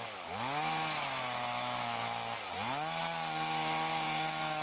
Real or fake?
fake